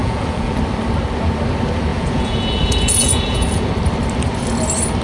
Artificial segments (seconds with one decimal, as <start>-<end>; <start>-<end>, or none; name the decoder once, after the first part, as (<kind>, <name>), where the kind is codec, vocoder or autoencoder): 0.0-0.6 (vocoder, Vocos); 1.9-3.7